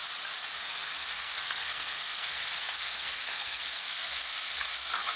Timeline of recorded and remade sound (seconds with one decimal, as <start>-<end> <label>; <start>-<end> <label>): 0.0-0.6 recorded; 0.6-5.2 remade